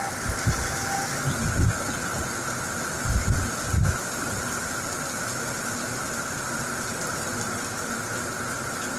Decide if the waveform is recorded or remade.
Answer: recorded